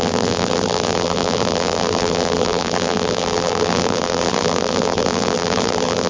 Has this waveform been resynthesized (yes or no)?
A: yes